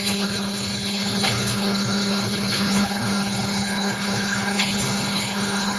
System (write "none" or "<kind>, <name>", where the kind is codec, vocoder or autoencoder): codec, HILCodec